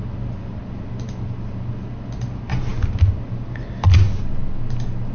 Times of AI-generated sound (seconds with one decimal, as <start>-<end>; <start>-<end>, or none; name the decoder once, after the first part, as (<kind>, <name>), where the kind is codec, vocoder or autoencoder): none